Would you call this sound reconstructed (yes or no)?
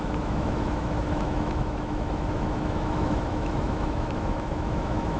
yes